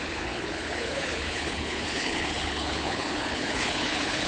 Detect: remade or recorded remade